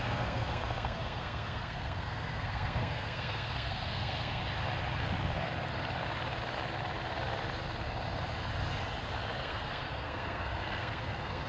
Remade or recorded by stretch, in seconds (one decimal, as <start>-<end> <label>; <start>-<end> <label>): 0.0-4.4 remade; 4.4-9.4 recorded; 9.4-11.5 remade